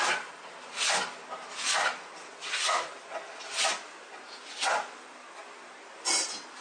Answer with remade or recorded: recorded